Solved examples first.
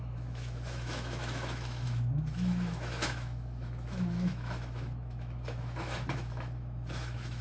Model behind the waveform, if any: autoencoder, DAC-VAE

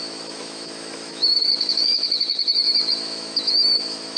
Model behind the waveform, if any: autoencoder, DAC-VAE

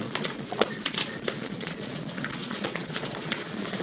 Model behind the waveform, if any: vocoder, Vocos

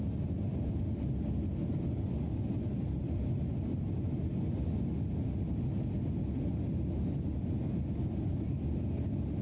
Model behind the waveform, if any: none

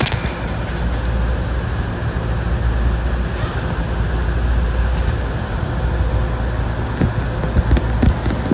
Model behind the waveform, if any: none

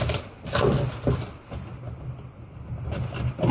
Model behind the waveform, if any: none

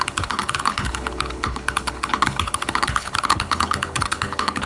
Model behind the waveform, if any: codec, HILCodec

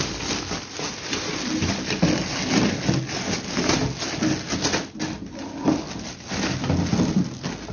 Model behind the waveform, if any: none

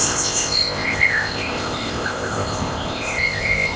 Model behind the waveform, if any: codec, ZipCodec